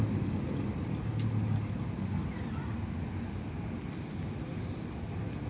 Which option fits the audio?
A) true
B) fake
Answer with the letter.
A